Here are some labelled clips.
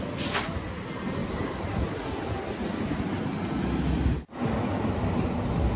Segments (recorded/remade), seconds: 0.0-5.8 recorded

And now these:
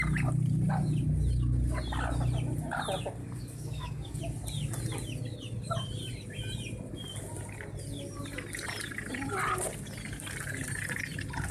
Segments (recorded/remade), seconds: 0.0-3.2 recorded; 3.2-4.2 remade; 4.2-11.5 recorded

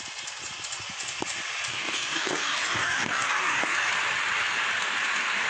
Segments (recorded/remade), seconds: 0.0-1.7 recorded; 1.7-3.9 remade; 3.9-5.5 recorded